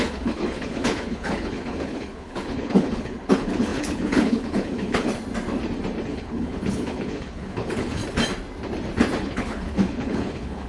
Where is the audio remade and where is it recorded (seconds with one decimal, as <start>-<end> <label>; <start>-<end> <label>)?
0.0-5.1 remade; 5.1-6.1 recorded; 6.1-8.0 remade; 8.0-9.2 recorded; 9.2-10.7 remade